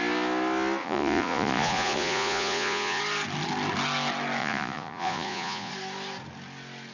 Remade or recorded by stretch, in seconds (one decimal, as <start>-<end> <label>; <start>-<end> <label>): 0.0-0.8 recorded; 0.8-3.0 remade; 3.0-4.4 recorded; 4.4-5.7 remade; 5.7-6.9 recorded